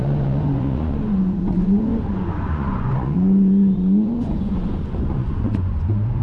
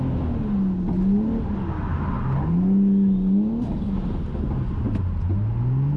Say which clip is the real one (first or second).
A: second